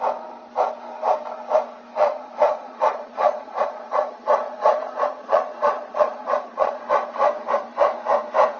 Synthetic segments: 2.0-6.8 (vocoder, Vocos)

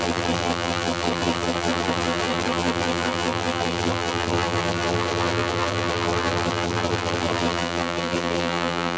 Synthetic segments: 0.0-9.0 (vocoder, BigVGAN v2)

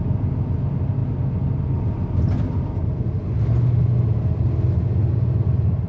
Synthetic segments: none

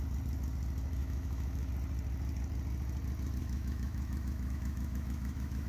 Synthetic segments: 1.0-1.7 (autoencoder, DAC-VAE); 3.4-5.7

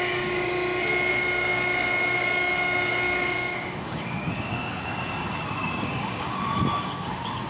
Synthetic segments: 0.0-0.5 (codec, DAC); 1.1-7.5

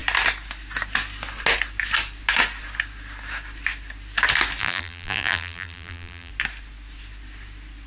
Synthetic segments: 4.6-6.3 (vocoder, BigVGAN v2)

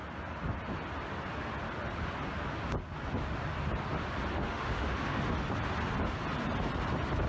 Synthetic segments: 4.3-5.3 (autoencoder, DAC-VAE)